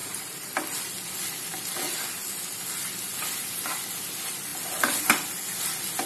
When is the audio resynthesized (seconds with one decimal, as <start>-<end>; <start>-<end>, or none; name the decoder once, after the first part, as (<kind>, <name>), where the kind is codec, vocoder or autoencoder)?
0.0-0.9 (vocoder, BigVGAN v2)